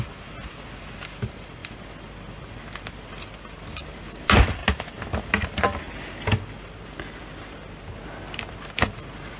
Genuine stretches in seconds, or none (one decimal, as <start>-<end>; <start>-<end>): 0.0-9.4